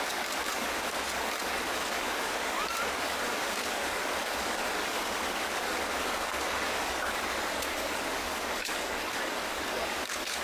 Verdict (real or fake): fake